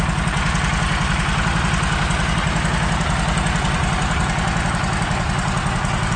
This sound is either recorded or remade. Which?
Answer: recorded